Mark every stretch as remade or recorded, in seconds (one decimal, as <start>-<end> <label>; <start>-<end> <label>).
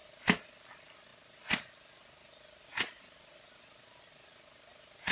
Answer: 0.0-0.7 remade; 0.7-1.1 recorded; 1.1-4.1 remade; 4.1-5.1 recorded